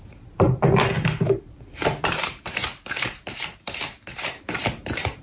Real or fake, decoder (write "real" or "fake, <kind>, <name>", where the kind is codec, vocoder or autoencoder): fake, vocoder, BigVGAN v2